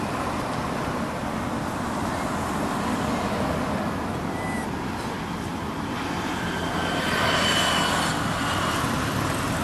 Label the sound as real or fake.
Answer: real